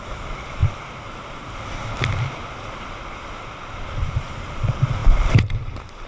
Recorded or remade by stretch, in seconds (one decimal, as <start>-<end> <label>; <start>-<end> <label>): 0.0-0.6 remade; 0.6-4.1 recorded; 4.1-6.1 remade